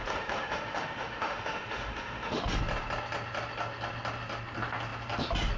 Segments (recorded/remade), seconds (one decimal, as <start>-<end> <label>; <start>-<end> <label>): 0.0-2.5 remade; 2.5-5.6 recorded